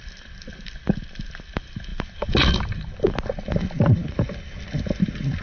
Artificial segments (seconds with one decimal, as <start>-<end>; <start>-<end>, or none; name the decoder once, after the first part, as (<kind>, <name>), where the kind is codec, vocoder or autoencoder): none